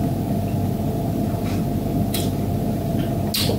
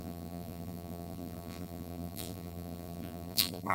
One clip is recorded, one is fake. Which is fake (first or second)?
second